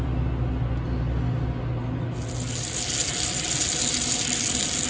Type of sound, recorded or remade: recorded